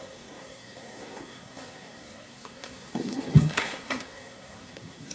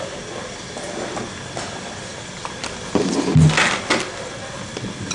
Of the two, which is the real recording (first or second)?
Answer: second